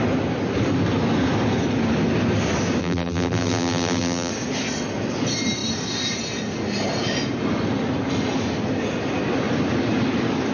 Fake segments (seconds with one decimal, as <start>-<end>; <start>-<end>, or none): 2.8-4.3